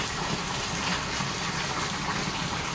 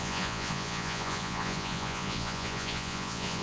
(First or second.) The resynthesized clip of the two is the second